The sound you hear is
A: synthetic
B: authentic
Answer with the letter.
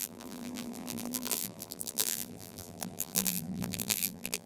A